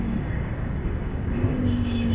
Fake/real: fake